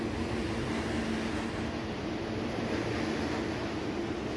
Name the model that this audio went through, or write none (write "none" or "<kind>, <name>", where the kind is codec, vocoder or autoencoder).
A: none